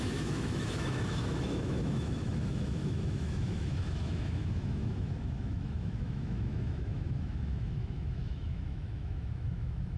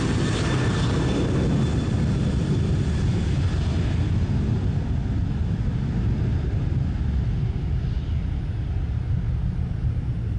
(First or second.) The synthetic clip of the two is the first